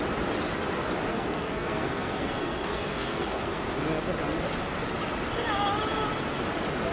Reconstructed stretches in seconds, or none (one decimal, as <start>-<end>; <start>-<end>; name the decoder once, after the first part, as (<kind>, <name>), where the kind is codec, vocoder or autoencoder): 1.1-3.6 (codec, SNAC)